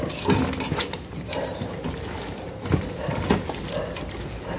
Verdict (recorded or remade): recorded